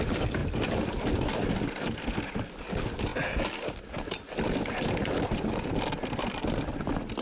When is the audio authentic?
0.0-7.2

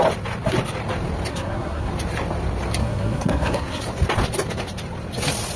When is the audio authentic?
0.0-1.3; 1.9-2.8; 3.8-5.6

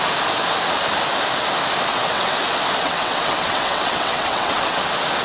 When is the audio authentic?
0.0-1.9; 2.4-2.8; 4.8-5.2

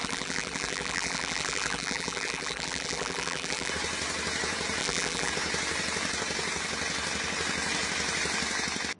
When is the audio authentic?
3.7-4.8; 5.3-9.0